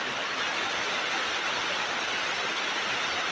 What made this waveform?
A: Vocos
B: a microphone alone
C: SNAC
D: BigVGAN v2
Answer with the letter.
B